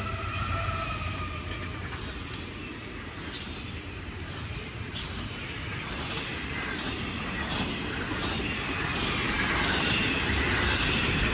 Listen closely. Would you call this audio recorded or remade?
recorded